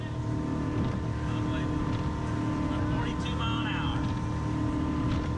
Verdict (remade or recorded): recorded